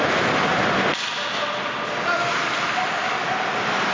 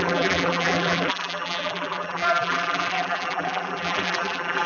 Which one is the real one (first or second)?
first